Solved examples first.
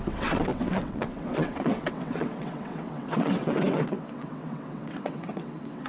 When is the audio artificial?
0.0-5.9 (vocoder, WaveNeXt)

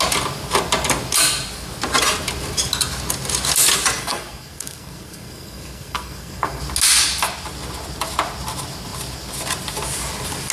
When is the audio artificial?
4.0-6.6 (codec, SNAC)

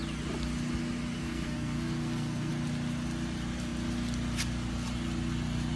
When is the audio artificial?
1.2-2.5 (codec, SNAC)

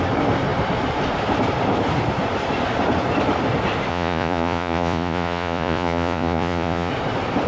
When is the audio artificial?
3.9-6.9 (vocoder, Vocos)

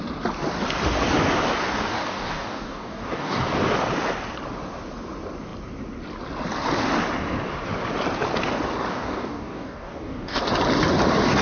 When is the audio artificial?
1.9-3.4 (codec, DAC); 8.9-10.4